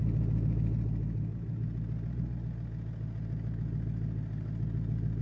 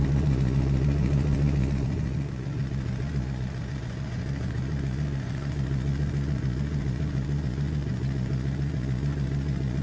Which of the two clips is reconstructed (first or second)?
second